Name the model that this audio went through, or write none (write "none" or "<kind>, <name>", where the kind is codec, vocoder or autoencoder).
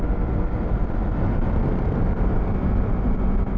none